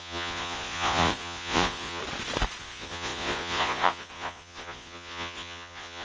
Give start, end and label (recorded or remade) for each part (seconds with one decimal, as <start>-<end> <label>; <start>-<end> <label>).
0.0-2.0 remade; 2.0-2.6 recorded; 2.6-6.0 remade